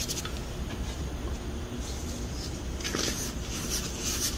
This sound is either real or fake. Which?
real